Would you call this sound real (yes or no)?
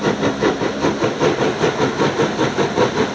yes